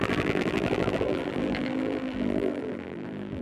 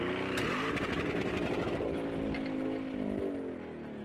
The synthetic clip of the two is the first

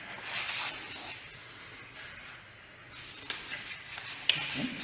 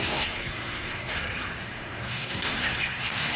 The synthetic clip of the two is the second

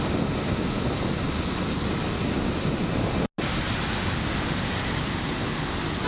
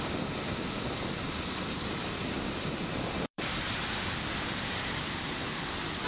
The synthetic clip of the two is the second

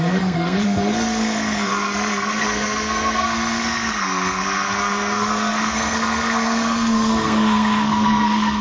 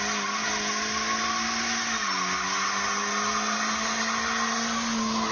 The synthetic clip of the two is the first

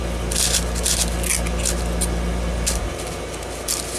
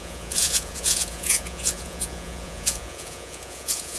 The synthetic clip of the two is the second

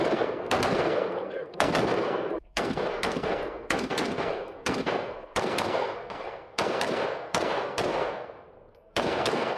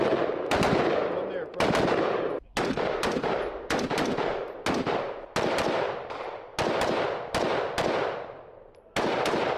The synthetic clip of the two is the first